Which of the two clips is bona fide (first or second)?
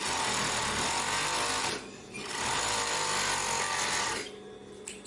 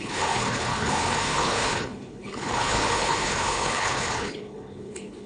first